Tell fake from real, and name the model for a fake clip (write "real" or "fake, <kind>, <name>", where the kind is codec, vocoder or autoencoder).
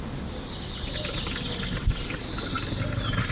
real